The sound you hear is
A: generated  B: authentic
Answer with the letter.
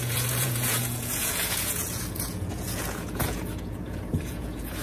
A